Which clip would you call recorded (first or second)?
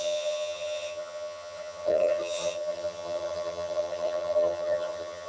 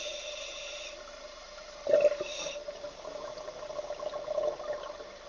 second